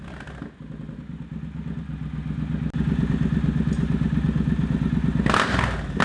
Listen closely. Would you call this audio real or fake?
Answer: real